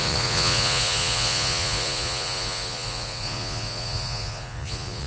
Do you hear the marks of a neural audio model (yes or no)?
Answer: yes